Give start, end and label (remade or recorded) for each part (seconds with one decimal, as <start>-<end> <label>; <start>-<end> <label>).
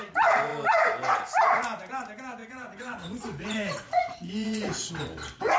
0.0-2.4 recorded; 2.4-4.9 remade; 4.9-5.6 recorded